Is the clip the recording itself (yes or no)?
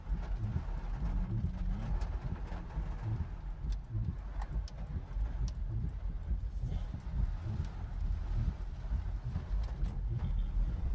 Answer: yes